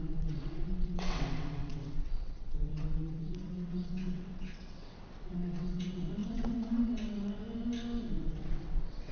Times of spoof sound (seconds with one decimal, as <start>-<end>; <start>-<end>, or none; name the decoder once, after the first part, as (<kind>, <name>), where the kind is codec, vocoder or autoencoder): 0.0-7.4 (vocoder, WaveNeXt); 8.0-9.1